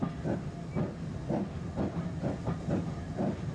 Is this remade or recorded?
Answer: recorded